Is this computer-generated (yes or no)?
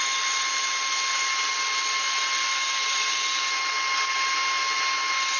no